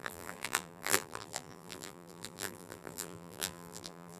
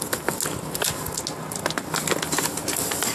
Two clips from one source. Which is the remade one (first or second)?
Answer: first